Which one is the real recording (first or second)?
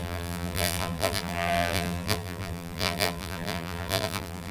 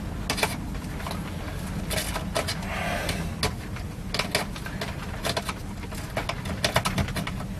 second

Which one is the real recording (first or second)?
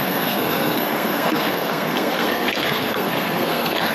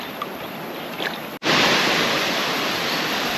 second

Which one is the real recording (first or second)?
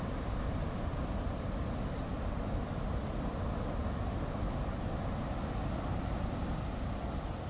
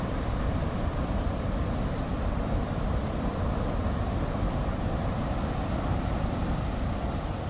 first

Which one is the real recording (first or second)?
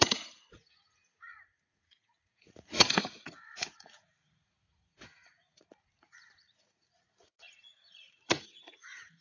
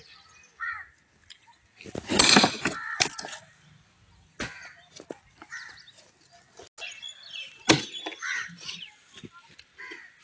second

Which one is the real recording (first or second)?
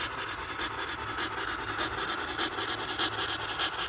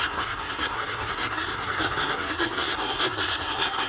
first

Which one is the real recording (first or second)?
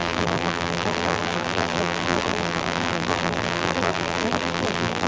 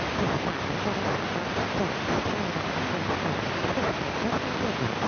second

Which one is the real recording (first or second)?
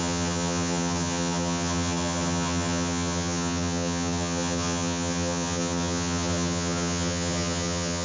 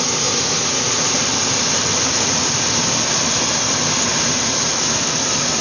second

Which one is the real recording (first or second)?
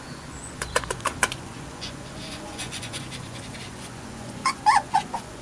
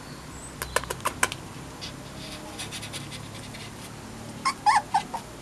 second